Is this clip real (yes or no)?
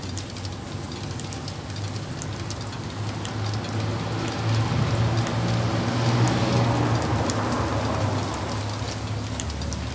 yes